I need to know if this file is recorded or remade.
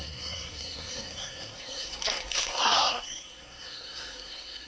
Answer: remade